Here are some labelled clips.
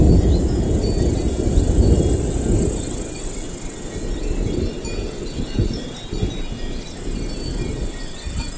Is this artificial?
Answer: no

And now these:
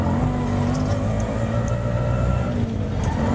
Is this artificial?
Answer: no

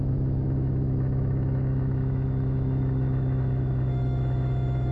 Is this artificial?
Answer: yes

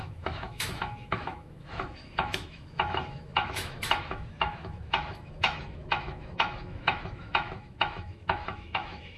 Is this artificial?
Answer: yes